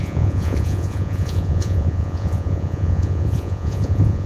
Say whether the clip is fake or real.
fake